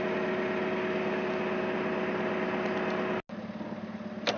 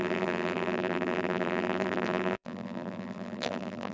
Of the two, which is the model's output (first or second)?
second